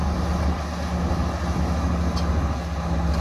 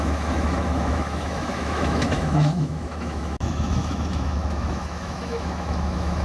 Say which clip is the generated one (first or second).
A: second